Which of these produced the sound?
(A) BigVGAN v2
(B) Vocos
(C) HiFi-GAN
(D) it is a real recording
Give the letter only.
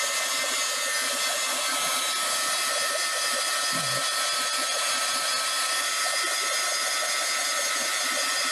A